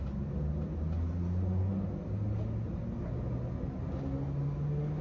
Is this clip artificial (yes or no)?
no